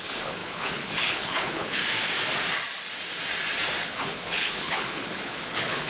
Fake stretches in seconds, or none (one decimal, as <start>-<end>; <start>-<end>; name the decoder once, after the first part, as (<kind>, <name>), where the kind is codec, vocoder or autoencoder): 0.0-1.8 (codec, HILCodec); 3.8-5.9

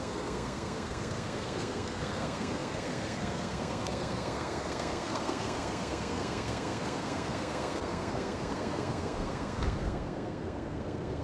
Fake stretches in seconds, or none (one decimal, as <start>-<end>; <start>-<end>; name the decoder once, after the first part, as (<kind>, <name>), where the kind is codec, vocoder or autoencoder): 0.0-11.2 (codec, SNAC)

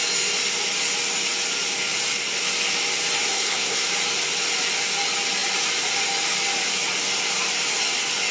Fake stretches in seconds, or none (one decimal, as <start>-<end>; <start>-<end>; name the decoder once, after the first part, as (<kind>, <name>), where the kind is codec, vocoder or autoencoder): 3.3-3.9 (codec, SNAC)

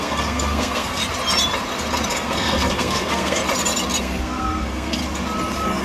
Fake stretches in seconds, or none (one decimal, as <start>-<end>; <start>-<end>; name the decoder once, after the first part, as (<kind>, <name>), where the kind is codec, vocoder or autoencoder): 0.0-1.0 (codec, SNAC); 2.1-3.4; 4.0-5.0

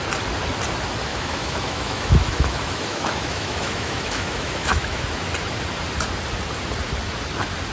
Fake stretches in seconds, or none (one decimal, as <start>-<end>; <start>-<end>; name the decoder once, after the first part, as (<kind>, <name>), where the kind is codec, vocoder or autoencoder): 1.1-5.3 (autoencoder, DAC-VAE)

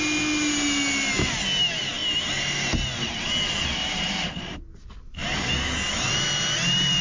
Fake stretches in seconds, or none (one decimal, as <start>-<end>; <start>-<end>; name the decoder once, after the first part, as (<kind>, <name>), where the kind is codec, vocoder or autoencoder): none